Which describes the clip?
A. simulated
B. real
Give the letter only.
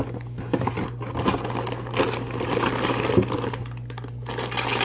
B